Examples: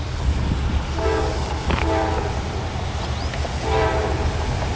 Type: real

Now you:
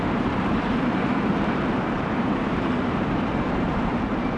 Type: fake